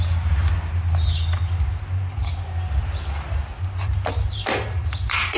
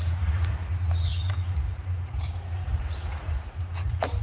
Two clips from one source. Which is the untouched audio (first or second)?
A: first